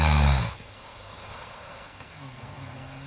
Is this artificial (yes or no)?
yes